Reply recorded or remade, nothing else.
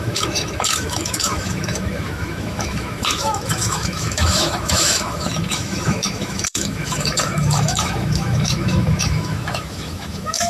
remade